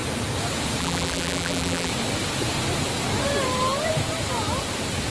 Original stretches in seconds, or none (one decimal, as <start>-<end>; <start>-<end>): 0.0-0.8; 1.9-5.1